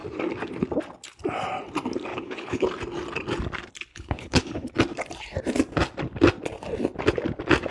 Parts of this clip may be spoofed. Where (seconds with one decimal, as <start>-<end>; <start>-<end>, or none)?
2.1-2.7; 3.9-4.7